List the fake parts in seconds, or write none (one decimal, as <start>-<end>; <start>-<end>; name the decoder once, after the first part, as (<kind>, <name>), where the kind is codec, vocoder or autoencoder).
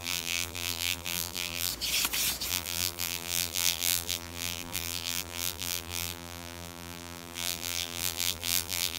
0.0-1.7 (vocoder, BigVGAN v2); 2.5-9.0